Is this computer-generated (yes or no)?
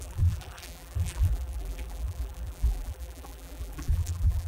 yes